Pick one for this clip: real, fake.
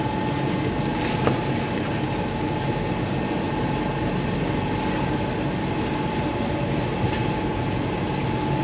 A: real